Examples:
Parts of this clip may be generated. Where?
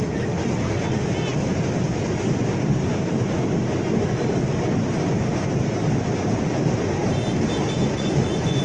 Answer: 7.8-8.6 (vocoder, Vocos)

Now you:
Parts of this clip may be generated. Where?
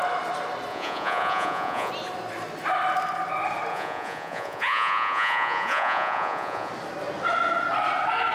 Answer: 0.7-1.9 (vocoder, Vocos); 3.7-6.7